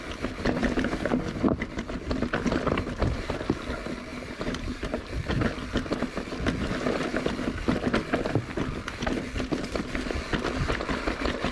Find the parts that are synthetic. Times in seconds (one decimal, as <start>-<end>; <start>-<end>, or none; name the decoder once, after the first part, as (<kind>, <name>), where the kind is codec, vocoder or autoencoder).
4.1-5.0 (vocoder, BigVGAN v2)